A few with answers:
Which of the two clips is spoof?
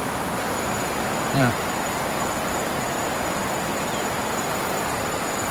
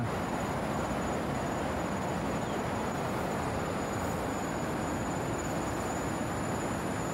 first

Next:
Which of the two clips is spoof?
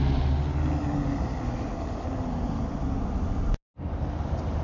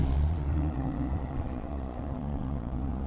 second